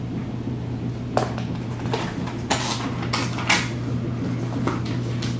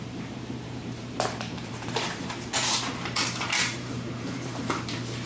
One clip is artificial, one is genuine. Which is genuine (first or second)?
first